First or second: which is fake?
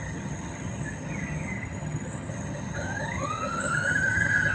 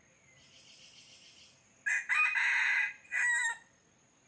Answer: first